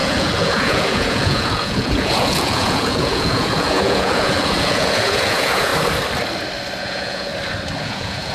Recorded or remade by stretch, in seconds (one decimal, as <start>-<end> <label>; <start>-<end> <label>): 0.0-5.7 remade; 5.7-6.8 recorded; 6.8-7.3 remade; 7.3-7.8 recorded; 7.8-8.3 remade